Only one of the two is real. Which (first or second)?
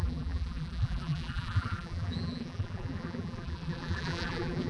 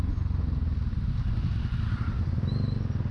second